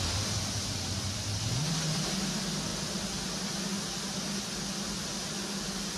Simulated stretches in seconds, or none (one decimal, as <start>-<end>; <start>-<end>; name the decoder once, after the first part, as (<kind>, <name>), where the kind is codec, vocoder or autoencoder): none